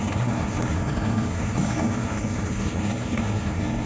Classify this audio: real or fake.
fake